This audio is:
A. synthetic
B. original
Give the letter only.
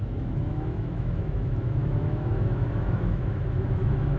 A